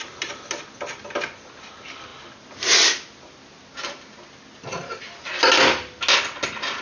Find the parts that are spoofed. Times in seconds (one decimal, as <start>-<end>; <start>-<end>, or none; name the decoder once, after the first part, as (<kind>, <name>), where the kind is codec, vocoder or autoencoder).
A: none